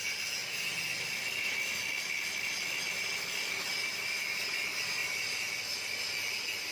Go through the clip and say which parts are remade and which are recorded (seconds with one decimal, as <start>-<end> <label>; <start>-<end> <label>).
0.0-5.0 recorded; 5.0-6.3 remade; 6.3-6.7 recorded